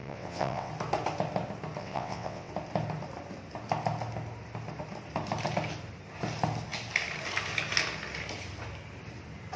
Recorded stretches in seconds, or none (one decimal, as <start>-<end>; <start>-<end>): 0.7-1.8; 2.5-9.6